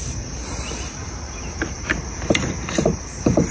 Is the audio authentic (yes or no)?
no